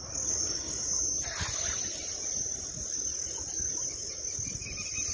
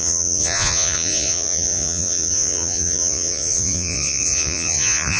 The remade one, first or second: second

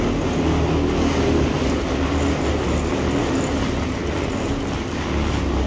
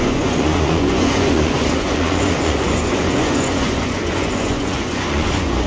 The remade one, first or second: second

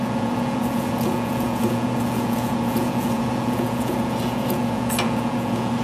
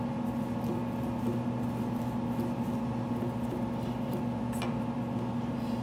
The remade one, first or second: first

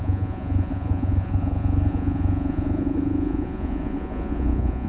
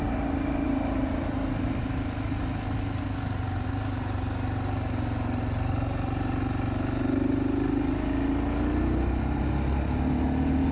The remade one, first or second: first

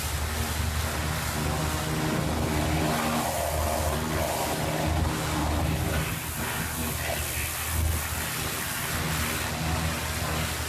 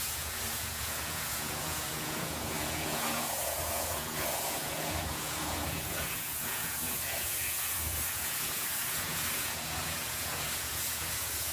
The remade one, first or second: second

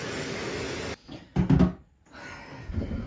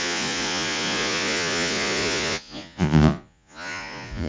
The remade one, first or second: second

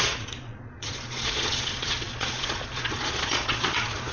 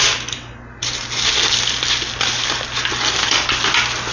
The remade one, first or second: first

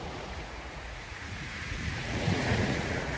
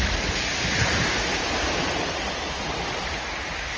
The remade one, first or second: first